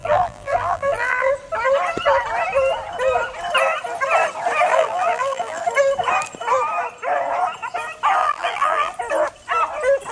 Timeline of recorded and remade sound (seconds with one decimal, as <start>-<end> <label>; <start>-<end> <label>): 0.0-1.3 remade; 1.3-4.7 recorded; 4.7-5.6 remade; 5.6-8.2 recorded; 8.2-8.9 remade; 8.9-10.1 recorded